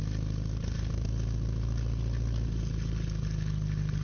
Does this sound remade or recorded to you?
recorded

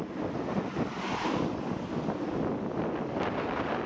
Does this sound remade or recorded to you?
recorded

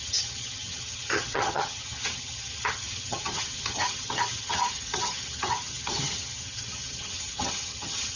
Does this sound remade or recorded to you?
remade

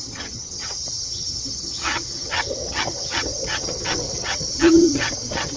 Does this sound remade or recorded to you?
remade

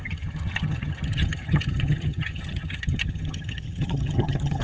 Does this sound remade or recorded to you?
remade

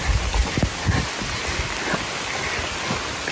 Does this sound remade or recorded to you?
recorded